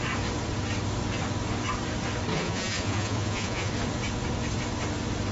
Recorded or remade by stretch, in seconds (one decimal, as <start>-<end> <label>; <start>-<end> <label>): 0.0-2.3 recorded; 2.3-3.7 remade; 3.7-5.3 recorded